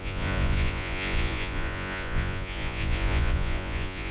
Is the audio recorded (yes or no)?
no